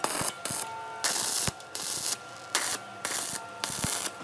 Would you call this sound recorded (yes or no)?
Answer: yes